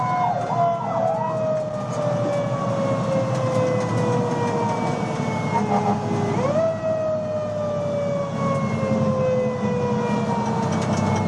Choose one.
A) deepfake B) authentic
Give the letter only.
B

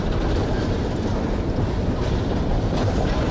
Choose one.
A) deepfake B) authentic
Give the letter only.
A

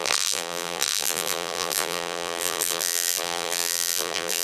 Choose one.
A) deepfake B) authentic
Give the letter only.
A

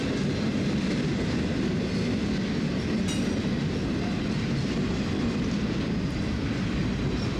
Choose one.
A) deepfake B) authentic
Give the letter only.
B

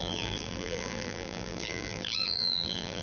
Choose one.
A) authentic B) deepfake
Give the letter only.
B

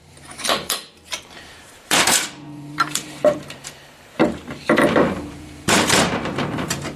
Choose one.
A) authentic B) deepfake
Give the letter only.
B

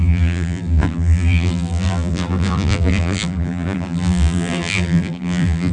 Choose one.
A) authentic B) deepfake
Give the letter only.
B